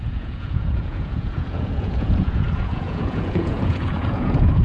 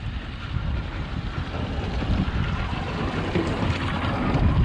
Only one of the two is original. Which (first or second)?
second